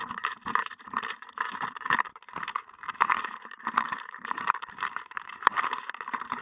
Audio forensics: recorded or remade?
remade